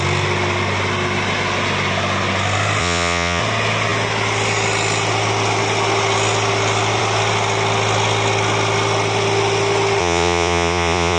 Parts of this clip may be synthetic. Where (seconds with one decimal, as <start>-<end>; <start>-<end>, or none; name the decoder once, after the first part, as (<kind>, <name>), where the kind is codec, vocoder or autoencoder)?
2.8-3.4 (vocoder, Vocos); 10.0-11.2